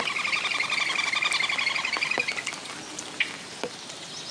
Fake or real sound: real